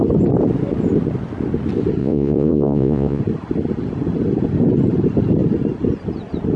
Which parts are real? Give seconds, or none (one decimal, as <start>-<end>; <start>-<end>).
0.0-2.0; 3.2-6.6

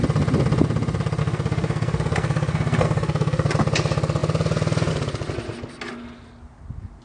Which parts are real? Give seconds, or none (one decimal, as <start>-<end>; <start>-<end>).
0.0-1.2; 3.5-7.0

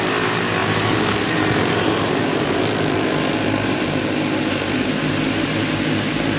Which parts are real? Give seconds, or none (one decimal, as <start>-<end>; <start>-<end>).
0.0-0.6; 2.5-6.4

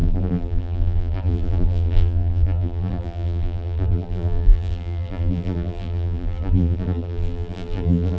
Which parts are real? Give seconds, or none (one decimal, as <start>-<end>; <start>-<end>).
none

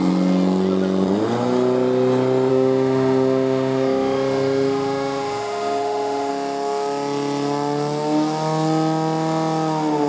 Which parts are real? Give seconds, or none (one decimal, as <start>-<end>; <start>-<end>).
0.0-2.5; 6.3-10.1

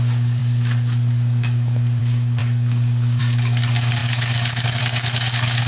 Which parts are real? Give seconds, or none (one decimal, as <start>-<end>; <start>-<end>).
none